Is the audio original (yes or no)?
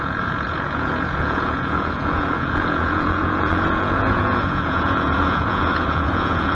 no